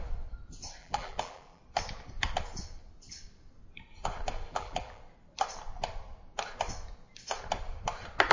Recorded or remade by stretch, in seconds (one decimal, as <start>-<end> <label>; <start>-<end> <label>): 0.0-0.8 recorded; 0.8-1.6 remade; 1.6-4.5 recorded; 4.5-5.0 remade; 5.0-8.3 recorded